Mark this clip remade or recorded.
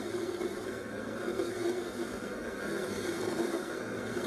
remade